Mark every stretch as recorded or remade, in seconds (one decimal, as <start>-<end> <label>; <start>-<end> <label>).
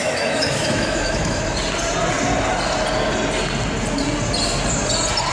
0.0-1.4 remade; 1.4-5.3 recorded